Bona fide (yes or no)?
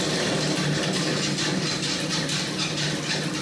yes